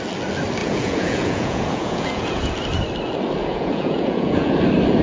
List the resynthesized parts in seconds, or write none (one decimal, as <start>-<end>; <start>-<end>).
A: 0.6-2.5; 3.4-4.6